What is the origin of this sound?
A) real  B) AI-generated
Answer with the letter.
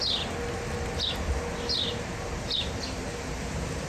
A